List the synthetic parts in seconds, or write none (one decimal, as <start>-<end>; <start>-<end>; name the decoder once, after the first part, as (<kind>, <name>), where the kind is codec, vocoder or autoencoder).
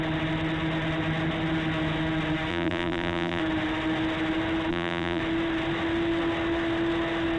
2.5-3.4 (vocoder, BigVGAN v2); 4.7-5.2